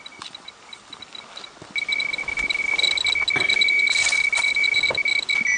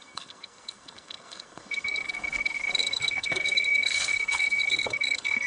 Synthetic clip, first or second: second